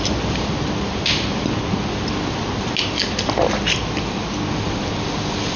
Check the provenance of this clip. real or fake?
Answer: real